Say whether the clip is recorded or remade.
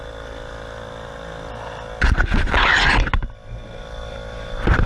recorded